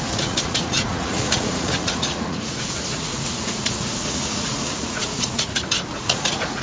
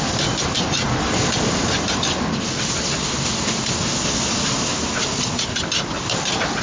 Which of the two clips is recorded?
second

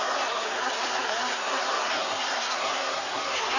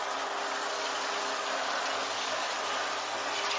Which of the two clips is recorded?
second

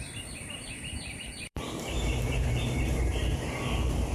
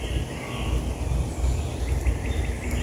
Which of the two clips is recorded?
second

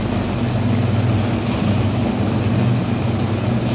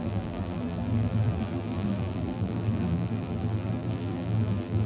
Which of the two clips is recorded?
first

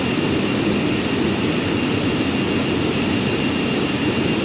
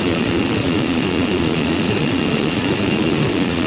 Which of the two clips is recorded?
first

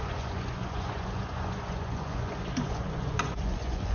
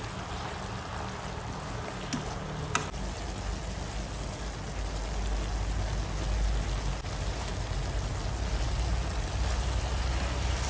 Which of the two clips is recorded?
second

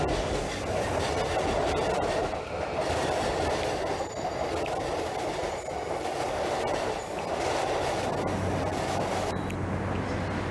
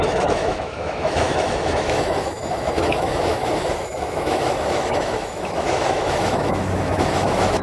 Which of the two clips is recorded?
first